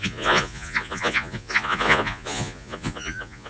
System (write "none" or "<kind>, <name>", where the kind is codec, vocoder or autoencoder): vocoder, Vocos